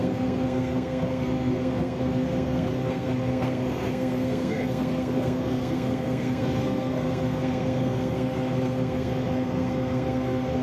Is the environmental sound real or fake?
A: fake